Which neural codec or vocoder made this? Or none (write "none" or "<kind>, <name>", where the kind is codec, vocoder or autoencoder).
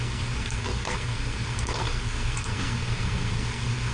codec, SNAC